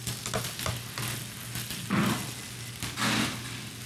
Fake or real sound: real